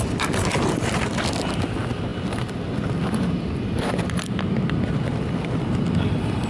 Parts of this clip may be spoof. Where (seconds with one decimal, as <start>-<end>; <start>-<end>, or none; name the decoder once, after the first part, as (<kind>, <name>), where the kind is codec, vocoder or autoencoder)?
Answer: none